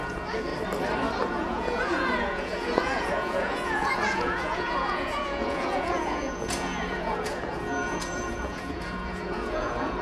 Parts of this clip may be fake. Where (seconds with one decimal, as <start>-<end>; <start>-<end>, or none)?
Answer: 0.0-0.5; 1.3-10.0